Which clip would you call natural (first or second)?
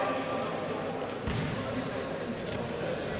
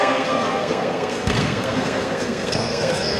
first